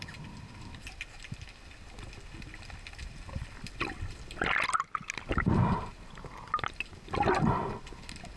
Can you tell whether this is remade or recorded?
recorded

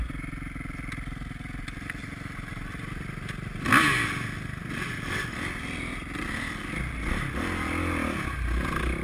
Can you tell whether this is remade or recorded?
recorded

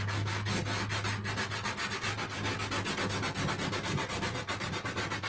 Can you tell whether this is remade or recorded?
recorded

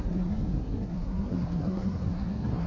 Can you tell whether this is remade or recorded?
remade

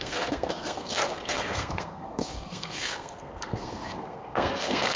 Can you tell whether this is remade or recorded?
remade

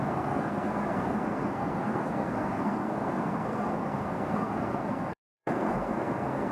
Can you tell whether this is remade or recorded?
remade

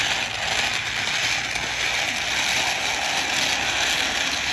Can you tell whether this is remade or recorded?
recorded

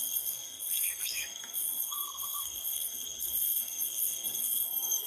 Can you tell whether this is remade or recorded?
remade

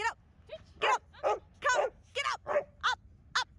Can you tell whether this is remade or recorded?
recorded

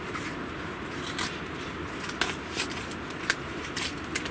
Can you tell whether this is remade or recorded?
recorded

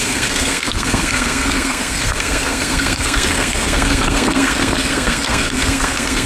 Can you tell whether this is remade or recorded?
remade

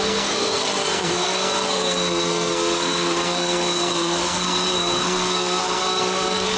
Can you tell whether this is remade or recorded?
remade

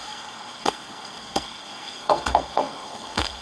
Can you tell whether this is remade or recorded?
remade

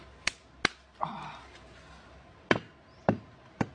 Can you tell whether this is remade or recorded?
recorded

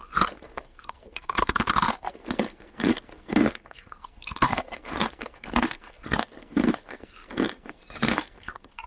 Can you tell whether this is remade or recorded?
remade